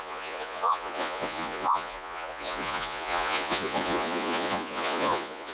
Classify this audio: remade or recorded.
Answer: remade